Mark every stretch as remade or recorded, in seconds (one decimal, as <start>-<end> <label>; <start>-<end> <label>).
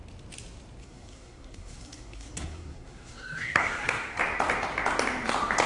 0.0-0.8 recorded; 0.8-4.2 remade; 4.2-5.7 recorded